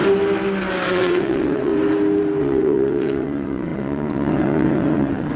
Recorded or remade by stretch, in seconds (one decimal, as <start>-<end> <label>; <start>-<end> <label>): 0.0-0.9 recorded; 0.9-1.7 remade; 1.7-2.4 recorded; 2.4-5.4 remade